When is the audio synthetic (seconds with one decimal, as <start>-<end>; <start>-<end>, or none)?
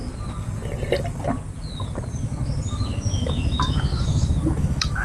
2.7-5.0